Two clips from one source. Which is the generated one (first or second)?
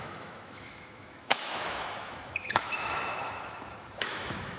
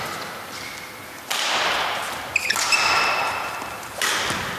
first